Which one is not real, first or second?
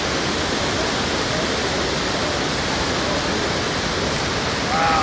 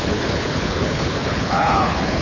second